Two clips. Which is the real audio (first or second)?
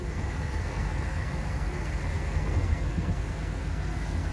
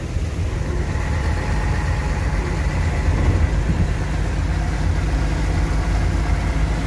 second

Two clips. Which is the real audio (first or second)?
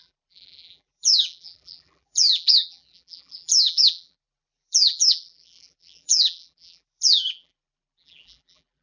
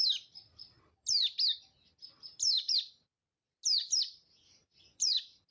second